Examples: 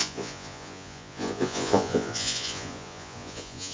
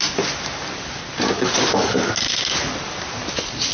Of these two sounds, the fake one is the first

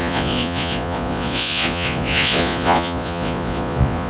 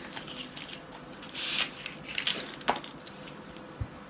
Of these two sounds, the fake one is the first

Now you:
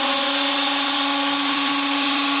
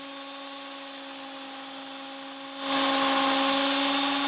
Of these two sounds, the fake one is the first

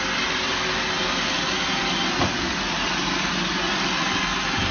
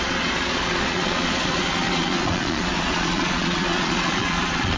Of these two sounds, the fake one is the second